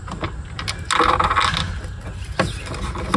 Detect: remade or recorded recorded